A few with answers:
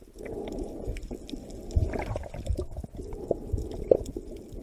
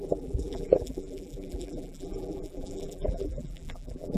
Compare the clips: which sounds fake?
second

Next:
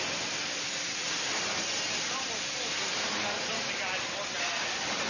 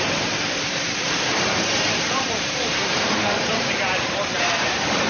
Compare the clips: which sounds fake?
second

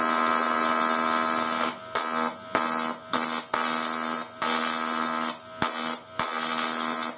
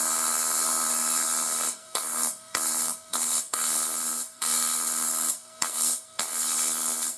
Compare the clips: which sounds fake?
second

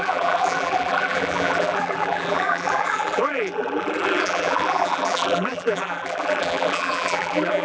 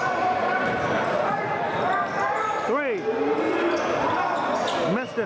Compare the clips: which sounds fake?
first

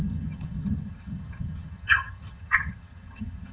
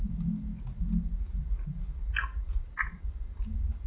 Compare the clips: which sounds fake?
first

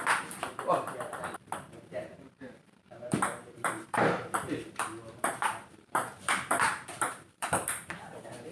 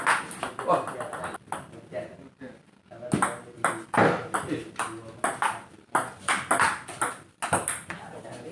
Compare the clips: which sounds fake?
first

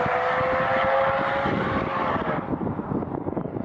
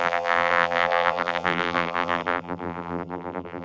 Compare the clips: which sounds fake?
second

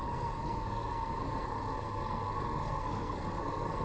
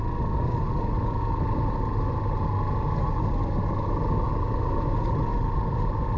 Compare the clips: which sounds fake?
first